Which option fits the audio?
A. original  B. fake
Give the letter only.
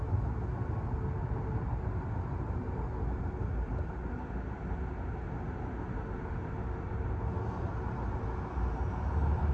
A